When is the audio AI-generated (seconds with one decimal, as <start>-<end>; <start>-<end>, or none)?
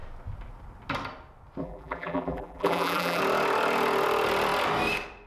1.6-3.2